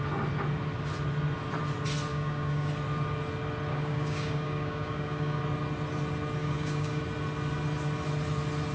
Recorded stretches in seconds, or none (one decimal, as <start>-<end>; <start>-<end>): 0.0-2.1; 2.7-3.7; 5.4-6.4; 7.0-8.7